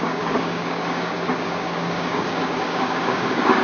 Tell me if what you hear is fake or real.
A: fake